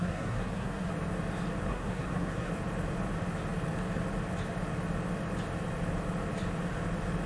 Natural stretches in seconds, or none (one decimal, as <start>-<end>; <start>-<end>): 0.9-1.7; 2.5-7.3